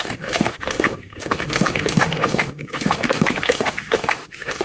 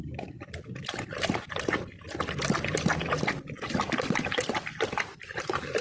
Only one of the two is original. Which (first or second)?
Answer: second